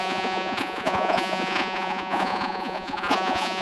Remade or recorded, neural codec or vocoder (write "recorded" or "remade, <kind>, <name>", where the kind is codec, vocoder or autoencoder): remade, vocoder, Vocos